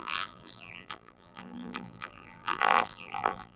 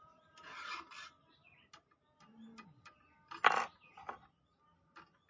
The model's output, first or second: first